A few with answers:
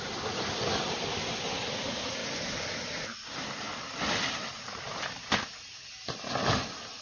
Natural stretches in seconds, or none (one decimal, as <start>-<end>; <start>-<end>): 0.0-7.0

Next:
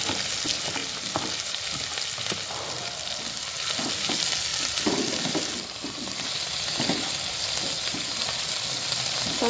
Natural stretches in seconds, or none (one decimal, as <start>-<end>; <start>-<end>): 0.0-9.5

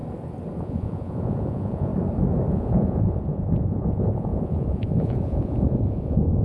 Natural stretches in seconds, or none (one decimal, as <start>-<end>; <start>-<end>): 0.0-0.6; 1.9-2.5

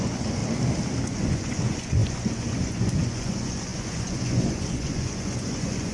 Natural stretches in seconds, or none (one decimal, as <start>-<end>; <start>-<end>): 0.4-1.0

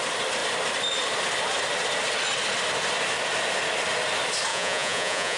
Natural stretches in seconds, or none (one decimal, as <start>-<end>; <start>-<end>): 0.0-4.5